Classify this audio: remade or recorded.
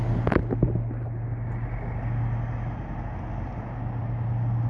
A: recorded